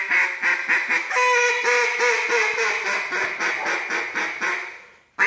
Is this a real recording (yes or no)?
yes